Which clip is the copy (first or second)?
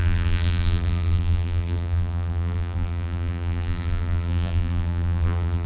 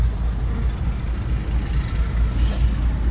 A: first